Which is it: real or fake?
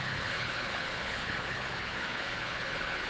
fake